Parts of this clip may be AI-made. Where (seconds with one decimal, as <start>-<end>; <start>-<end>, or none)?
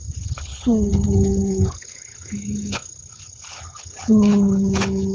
0.0-5.1